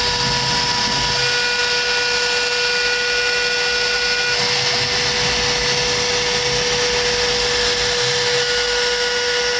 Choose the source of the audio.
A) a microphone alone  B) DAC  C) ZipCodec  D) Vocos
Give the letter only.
A